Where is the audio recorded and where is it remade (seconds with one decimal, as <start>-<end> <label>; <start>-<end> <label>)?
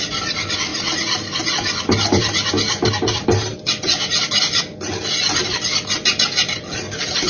0.0-7.3 recorded